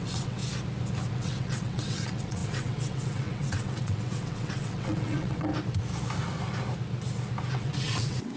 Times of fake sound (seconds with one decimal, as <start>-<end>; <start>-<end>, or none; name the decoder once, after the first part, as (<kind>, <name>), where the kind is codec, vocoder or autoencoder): 0.0-0.4 (vocoder, WaveNeXt); 1.1-5.5; 7.5-8.4